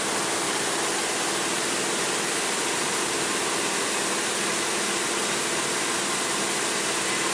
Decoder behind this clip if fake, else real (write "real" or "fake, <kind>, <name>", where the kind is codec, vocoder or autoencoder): real